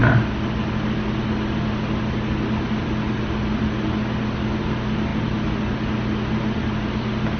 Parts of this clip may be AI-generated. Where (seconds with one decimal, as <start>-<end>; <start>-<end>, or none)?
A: none